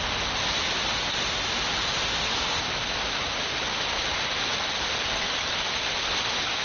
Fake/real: real